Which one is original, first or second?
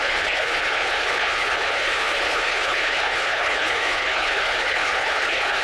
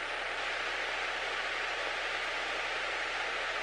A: second